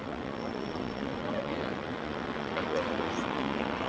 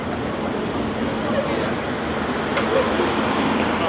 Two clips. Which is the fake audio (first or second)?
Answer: first